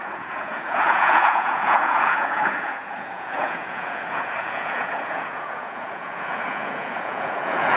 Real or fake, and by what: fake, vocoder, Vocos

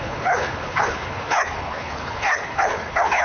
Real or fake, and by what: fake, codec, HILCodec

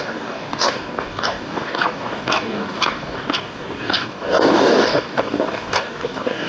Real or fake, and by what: fake, codec, DAC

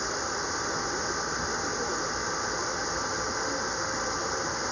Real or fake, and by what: real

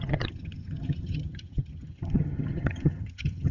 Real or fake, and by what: fake, vocoder, HiFi-GAN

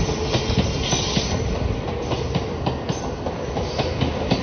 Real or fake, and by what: real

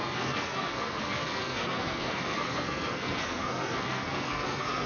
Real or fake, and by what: fake, codec, SNAC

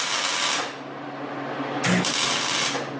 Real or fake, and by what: real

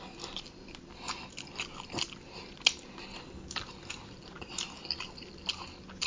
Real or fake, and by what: real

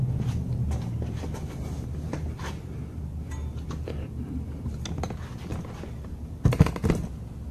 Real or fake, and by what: real